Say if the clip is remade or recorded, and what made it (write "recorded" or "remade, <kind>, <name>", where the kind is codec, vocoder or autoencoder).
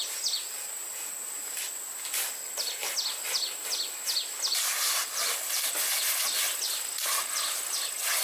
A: recorded